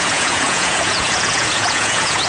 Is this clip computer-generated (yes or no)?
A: yes